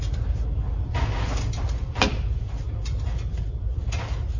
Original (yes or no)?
yes